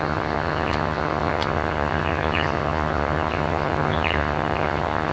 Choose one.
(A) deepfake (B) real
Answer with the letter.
A